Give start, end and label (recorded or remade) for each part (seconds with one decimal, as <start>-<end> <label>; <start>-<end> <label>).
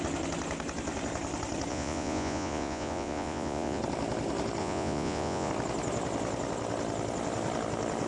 0.0-1.7 recorded; 1.7-3.8 remade; 3.8-4.6 recorded; 4.6-5.5 remade; 5.5-8.1 recorded